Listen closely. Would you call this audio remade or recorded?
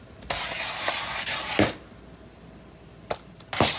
recorded